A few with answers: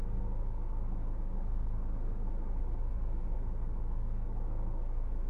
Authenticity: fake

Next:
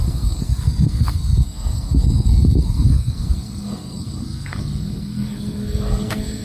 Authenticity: fake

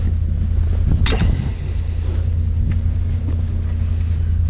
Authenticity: real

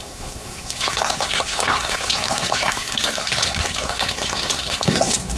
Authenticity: fake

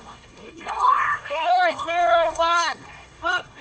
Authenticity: fake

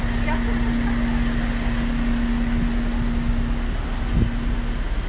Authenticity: real